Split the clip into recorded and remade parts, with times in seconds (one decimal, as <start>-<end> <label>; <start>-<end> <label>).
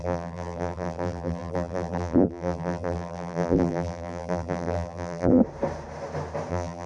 0.0-5.4 remade; 5.4-6.5 recorded; 6.5-6.9 remade